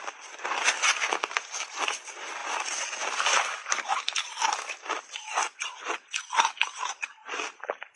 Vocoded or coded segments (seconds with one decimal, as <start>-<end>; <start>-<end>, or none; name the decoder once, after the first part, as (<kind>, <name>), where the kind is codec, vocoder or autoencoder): 2.4-3.9 (vocoder, BigVGAN v2)